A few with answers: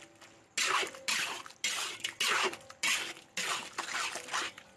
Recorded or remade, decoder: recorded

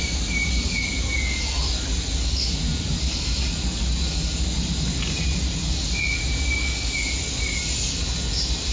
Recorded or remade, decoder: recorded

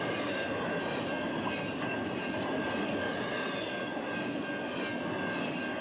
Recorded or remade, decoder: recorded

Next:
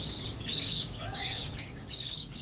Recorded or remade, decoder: remade, codec, DAC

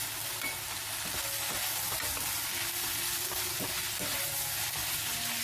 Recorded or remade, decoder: recorded